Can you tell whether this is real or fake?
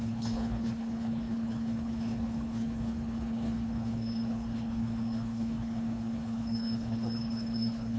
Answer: fake